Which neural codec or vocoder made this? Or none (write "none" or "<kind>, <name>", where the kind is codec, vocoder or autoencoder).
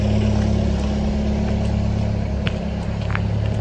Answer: none